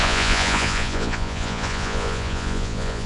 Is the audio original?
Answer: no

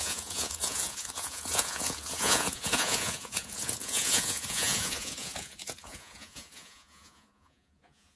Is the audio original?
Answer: no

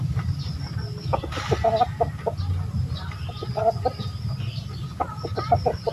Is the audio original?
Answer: yes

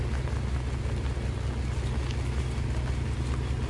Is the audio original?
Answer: yes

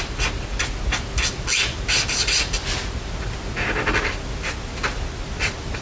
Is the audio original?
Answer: yes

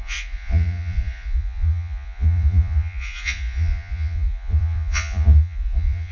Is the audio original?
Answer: no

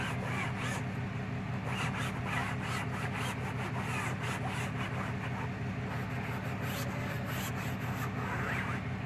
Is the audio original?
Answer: yes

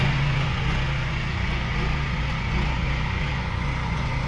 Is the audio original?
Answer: no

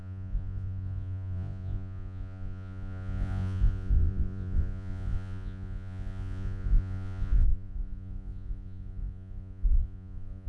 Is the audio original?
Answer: no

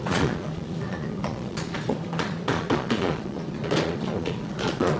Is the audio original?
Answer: no